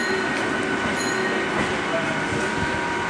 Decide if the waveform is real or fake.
real